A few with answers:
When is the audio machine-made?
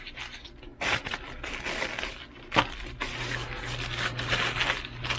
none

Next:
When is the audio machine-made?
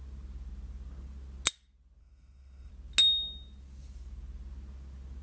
2.0-2.7 (codec, SNAC)